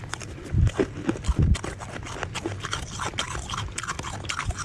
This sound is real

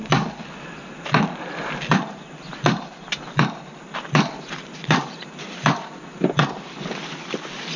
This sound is real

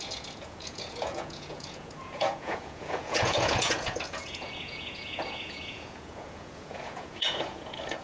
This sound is fake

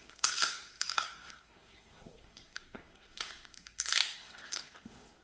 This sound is fake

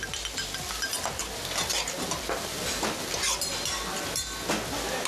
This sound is real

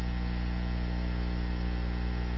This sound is real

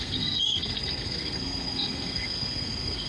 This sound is fake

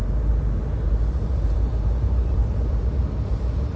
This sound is fake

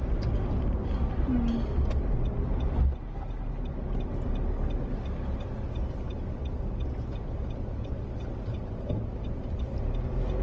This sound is real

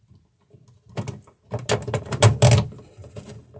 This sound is real